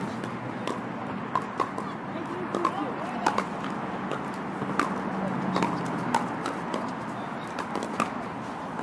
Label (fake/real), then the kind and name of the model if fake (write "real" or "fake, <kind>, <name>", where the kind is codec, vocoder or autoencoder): real